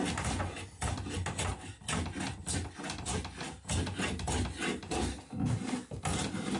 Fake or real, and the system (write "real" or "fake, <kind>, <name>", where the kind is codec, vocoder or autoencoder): real